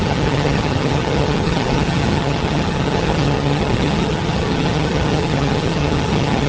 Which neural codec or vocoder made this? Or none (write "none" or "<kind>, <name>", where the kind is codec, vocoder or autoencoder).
vocoder, HiFi-GAN